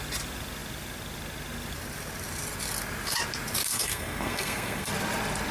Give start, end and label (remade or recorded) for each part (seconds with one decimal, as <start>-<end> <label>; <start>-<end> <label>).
0.0-3.7 recorded; 3.7-4.9 remade; 4.9-5.5 recorded